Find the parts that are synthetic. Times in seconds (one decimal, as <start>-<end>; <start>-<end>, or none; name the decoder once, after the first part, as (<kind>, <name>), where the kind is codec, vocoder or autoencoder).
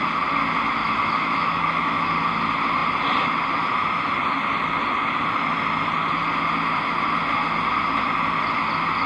0.8-2.1 (autoencoder, DAC-VAE)